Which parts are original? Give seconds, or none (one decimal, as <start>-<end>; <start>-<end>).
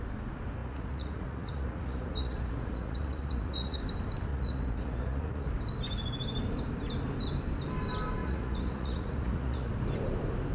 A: 0.0-0.6; 3.8-4.3; 5.5-8.2; 9.7-10.5